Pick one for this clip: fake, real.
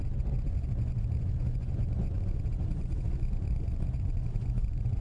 fake